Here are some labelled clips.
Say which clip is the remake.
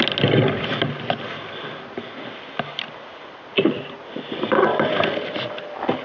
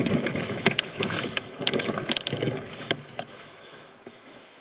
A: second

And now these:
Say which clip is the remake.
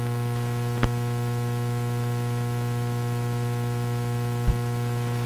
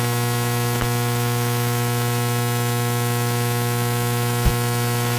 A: second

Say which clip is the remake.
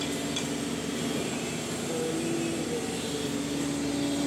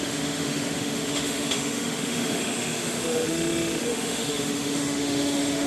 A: second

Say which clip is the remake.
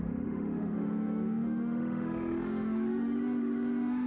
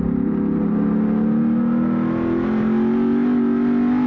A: first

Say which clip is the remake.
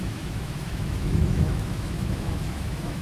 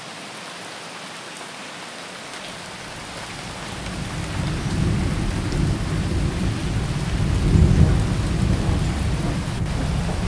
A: first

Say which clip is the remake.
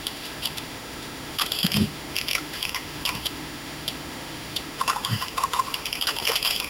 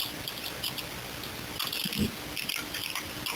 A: first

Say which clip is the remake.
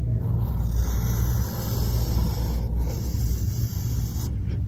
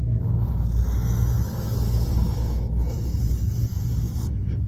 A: second